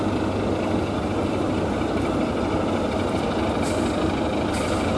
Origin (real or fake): real